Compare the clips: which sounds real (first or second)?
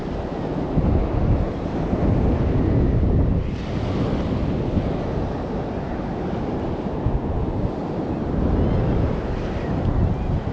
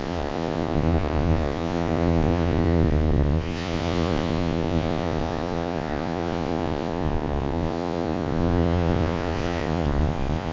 first